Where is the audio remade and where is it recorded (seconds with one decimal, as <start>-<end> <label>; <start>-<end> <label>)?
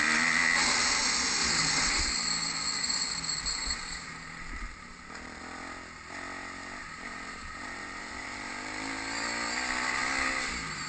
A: 0.0-1.4 recorded; 1.4-2.0 remade; 2.0-3.6 recorded; 3.6-5.4 remade; 5.4-6.8 recorded; 6.8-8.5 remade; 8.5-10.9 recorded